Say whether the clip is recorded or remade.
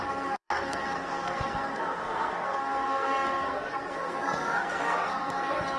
remade